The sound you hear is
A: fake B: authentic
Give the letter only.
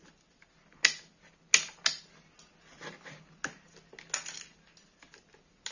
B